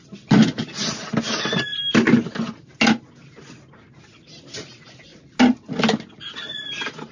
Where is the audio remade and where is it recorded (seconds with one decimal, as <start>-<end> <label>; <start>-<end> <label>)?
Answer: 0.0-7.1 recorded